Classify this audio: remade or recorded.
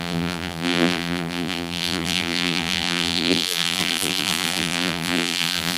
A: remade